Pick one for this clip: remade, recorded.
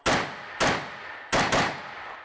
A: recorded